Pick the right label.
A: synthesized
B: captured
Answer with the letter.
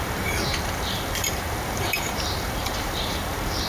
A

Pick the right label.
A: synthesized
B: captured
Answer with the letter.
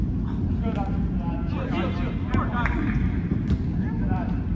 B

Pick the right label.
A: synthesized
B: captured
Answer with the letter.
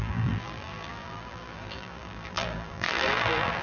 A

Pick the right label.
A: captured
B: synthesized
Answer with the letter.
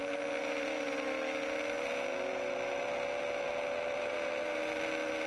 A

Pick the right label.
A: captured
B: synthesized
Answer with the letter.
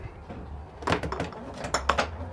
A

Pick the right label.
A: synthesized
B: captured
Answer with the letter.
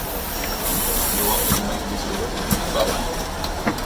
B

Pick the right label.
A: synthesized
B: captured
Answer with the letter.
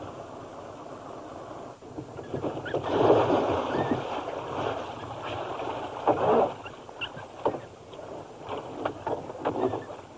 B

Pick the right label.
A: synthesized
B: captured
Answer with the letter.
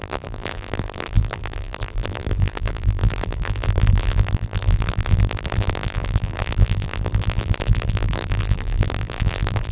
A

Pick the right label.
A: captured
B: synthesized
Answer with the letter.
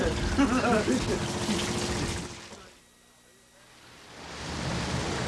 B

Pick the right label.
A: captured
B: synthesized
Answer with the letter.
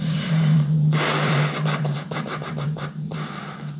B